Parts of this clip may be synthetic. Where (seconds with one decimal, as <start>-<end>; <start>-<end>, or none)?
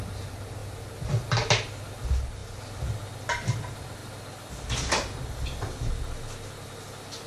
none